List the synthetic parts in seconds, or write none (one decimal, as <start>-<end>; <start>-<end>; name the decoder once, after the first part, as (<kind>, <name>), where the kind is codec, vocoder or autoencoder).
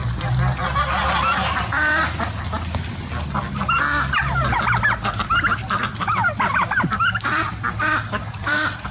0.0-0.6 (vocoder, BigVGAN v2); 1.6-2.0; 6.5-8.9